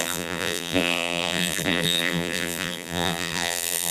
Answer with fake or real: fake